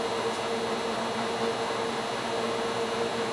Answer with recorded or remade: recorded